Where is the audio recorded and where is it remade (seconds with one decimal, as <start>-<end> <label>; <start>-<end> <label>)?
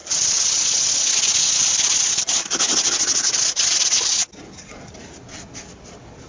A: 0.0-6.3 recorded